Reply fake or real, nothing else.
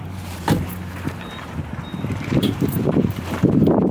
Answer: fake